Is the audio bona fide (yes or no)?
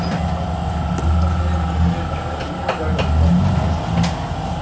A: yes